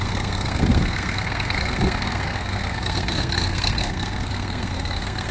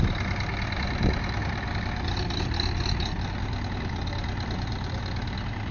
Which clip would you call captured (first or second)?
second